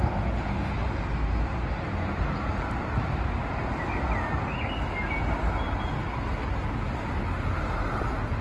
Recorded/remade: recorded